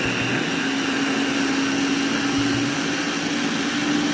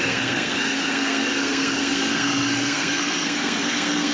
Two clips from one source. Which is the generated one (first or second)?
second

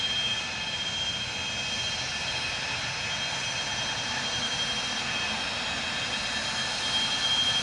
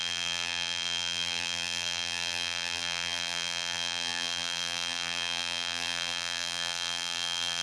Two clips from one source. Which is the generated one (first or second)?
second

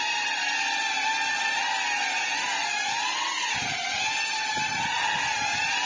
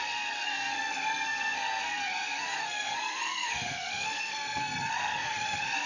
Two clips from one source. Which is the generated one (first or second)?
second